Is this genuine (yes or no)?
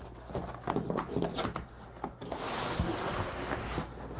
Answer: yes